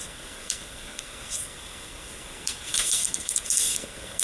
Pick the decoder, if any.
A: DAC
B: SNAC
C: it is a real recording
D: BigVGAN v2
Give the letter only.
B